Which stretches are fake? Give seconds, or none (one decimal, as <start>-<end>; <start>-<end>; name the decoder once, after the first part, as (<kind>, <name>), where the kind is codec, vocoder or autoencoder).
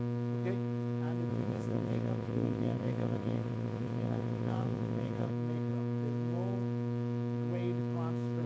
1.3-5.3 (vocoder, Vocos)